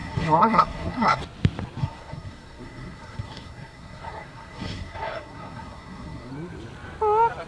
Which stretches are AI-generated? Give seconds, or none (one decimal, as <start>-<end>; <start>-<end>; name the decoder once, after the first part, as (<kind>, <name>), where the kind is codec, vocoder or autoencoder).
0.0-1.2 (codec, SNAC); 1.8-6.3

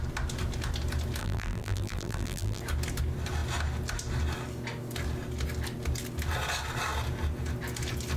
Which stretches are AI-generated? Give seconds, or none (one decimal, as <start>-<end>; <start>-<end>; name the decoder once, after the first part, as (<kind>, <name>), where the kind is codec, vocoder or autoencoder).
1.2-2.6 (vocoder, BigVGAN v2)

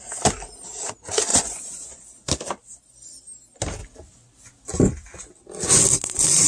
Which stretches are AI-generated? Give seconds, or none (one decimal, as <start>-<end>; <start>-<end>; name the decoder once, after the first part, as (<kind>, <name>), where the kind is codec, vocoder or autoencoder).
1.3-2.0 (vocoder, Vocos)

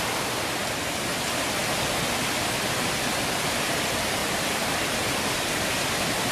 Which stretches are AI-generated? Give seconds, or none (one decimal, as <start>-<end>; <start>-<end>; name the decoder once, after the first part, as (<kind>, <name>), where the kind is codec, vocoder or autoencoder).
none

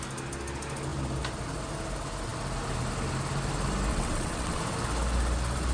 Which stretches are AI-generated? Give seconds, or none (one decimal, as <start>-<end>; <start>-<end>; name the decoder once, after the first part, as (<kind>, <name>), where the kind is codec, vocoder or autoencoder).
3.9-4.6 (vocoder, WaveNeXt)

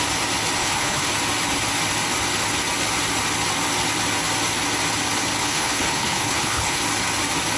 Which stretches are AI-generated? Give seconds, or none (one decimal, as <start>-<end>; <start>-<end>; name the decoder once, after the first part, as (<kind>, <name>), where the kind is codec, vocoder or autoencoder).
0.6-1.1 (codec, HILCodec); 5.4-6.8

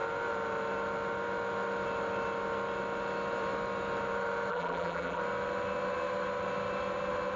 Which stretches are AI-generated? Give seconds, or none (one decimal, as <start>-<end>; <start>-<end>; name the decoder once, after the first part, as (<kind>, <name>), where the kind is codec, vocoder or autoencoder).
4.5-5.2 (vocoder, BigVGAN v2)